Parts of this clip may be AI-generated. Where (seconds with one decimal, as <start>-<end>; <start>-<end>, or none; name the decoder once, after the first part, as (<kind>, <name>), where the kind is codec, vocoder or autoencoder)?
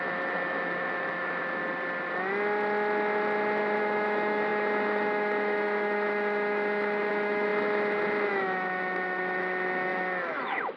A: 0.0-1.6 (autoencoder, DAC-VAE); 3.8-7.5; 8.3-10.8